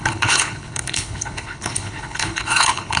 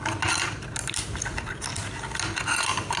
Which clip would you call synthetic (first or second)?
first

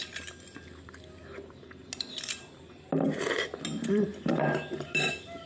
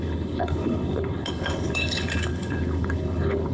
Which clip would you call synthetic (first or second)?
second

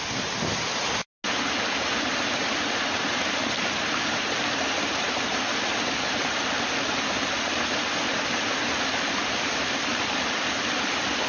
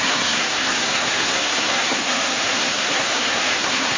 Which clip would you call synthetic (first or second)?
second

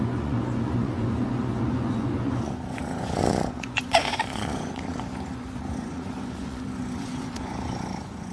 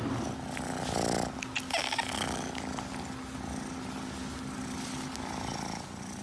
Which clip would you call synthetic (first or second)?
first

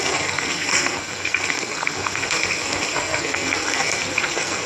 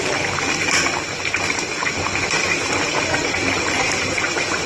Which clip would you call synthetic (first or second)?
first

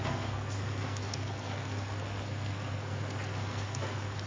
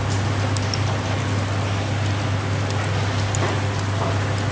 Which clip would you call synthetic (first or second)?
first